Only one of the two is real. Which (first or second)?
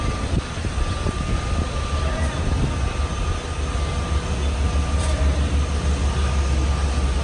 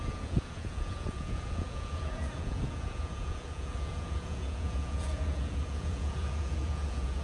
first